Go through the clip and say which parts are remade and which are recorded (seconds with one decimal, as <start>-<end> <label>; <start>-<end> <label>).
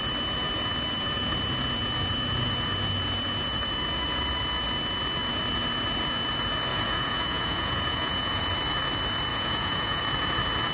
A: 0.0-6.7 recorded; 6.7-8.4 remade; 8.4-9.3 recorded; 9.3-10.0 remade; 10.0-10.7 recorded